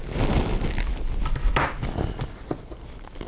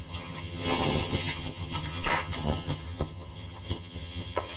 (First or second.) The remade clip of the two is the second